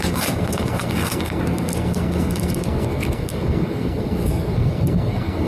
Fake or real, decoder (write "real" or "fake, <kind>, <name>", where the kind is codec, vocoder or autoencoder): fake, codec, SNAC